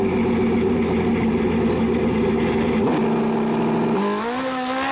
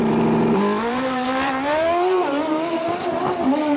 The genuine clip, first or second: first